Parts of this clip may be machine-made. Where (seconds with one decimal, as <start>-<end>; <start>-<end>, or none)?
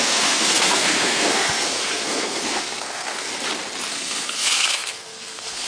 0.0-3.3; 3.9-5.7